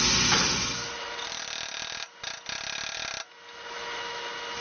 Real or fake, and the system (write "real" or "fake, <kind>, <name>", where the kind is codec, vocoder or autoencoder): real